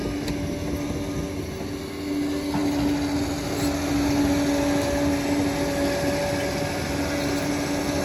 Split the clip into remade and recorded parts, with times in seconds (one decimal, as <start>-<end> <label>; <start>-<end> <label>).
0.0-8.0 recorded